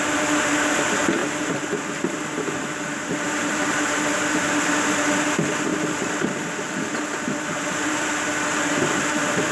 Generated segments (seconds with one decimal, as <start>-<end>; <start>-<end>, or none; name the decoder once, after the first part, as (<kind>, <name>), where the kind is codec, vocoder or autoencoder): 1.2-2.5 (vocoder, BigVGAN v2); 3.1-3.7; 5.7-9.5